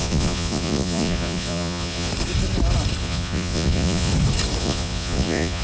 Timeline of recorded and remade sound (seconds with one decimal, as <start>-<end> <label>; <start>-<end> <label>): 0.0-2.1 remade; 2.1-3.0 recorded; 3.0-4.1 remade; 4.1-4.6 recorded; 4.6-5.6 remade